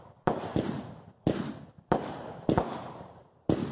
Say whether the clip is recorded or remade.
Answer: remade